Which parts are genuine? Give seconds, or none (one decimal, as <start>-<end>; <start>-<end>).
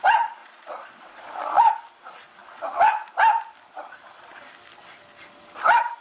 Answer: 0.0-0.4; 1.7-6.0